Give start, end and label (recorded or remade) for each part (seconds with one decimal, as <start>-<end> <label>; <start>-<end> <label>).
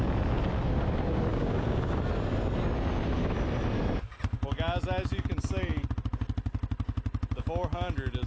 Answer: 0.0-1.3 recorded; 1.3-2.0 remade; 2.0-8.3 recorded